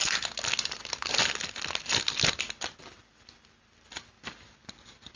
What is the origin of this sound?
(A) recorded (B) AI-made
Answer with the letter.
A